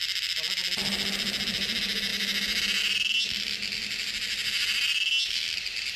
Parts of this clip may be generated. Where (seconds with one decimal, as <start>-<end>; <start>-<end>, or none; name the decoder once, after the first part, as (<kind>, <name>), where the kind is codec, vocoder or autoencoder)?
none